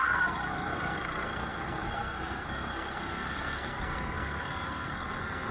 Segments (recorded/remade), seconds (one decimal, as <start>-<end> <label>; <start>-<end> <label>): 0.0-5.5 remade